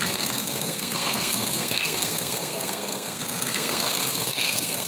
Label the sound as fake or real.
fake